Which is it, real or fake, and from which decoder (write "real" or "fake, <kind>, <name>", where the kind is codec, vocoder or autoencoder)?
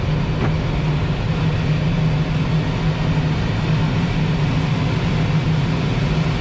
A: real